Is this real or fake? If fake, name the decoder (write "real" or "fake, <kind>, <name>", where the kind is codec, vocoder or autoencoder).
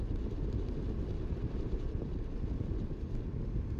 real